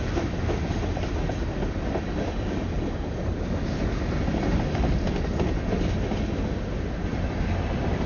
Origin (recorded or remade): recorded